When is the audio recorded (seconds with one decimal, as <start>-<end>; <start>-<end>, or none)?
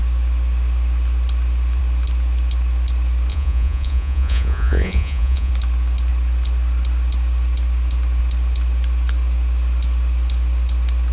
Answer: 0.0-3.3; 5.5-11.1